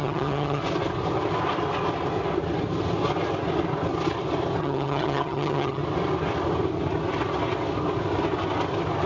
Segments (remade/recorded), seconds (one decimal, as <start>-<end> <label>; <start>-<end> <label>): 0.0-0.6 remade; 0.6-4.6 recorded; 4.6-5.8 remade; 5.8-9.1 recorded